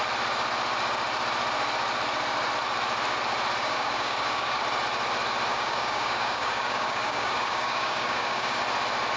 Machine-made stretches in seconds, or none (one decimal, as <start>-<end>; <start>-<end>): 3.6-4.6; 5.5-8.6